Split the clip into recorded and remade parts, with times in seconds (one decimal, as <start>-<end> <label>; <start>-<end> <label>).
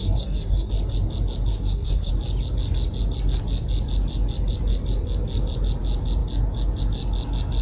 0.0-0.7 remade; 0.7-1.5 recorded; 1.5-2.1 remade; 2.1-7.6 recorded